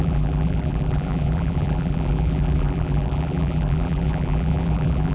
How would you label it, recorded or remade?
remade